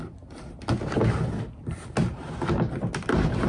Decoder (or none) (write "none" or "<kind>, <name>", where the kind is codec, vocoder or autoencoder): none